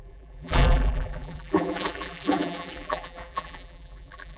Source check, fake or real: fake